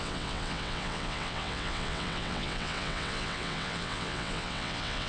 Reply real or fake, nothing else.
fake